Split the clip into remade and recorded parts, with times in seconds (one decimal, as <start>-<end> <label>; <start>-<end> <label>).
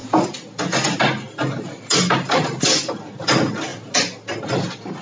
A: 0.0-2.6 recorded; 2.6-3.7 remade; 3.7-5.0 recorded